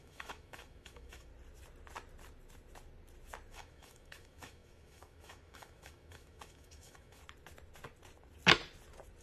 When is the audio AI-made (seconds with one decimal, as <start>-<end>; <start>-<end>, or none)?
0.0-1.3; 3.5-7.2